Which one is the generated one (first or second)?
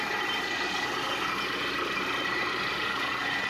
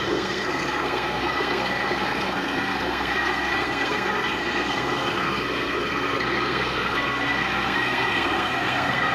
second